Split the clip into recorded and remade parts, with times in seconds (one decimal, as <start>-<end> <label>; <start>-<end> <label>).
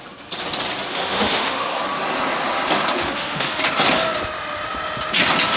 0.0-0.9 recorded; 0.9-1.8 remade; 1.8-3.0 recorded; 3.0-3.6 remade; 3.6-5.6 recorded